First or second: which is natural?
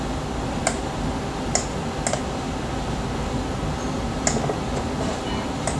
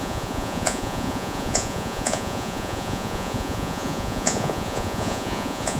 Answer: first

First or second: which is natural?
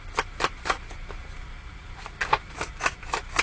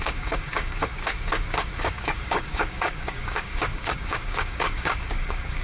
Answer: first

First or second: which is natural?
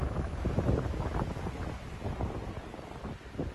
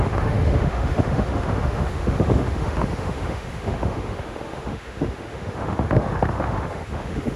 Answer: first